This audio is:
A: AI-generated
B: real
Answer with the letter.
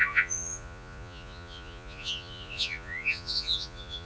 A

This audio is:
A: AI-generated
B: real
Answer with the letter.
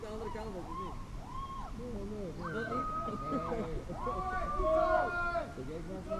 B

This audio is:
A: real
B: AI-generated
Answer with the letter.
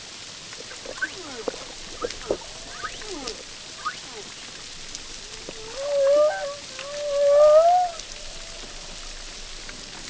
A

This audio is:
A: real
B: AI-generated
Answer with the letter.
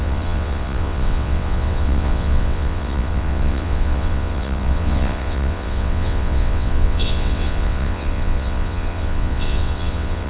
B